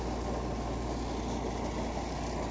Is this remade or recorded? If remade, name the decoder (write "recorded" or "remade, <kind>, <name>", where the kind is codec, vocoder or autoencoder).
recorded